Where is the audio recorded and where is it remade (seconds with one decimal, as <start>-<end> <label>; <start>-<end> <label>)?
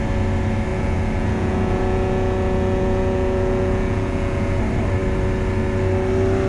0.0-0.7 recorded; 0.7-4.6 remade; 4.6-6.5 recorded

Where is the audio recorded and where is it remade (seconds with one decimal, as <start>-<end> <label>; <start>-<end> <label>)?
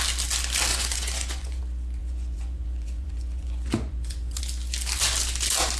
0.0-0.7 recorded; 0.7-1.6 remade; 1.6-2.0 recorded; 2.0-4.4 remade; 4.4-5.8 recorded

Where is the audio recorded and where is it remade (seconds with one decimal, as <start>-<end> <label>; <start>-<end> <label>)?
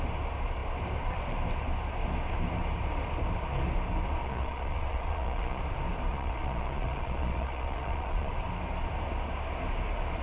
0.0-4.2 recorded; 4.2-5.6 remade; 5.6-6.1 recorded; 6.1-8.3 remade; 8.3-10.2 recorded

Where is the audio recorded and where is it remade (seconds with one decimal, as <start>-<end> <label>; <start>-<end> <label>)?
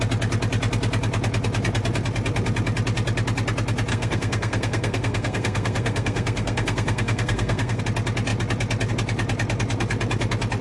0.0-3.9 recorded; 3.9-7.8 remade; 7.8-10.6 recorded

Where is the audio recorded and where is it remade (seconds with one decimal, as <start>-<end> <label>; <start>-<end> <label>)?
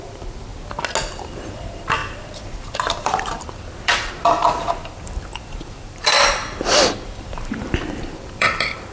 0.0-0.5 remade; 0.5-1.1 recorded; 1.1-8.9 remade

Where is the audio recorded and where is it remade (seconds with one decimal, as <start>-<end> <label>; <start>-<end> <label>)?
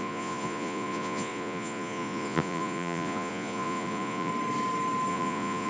0.0-4.3 remade; 4.3-5.1 recorded; 5.1-5.7 remade